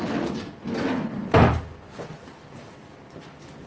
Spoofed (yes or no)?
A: no